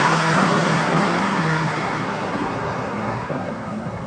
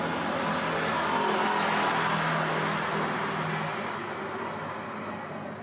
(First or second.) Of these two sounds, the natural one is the second